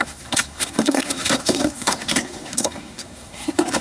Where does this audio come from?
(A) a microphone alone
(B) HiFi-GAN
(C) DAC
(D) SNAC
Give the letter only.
D